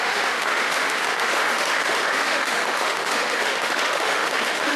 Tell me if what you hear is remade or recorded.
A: remade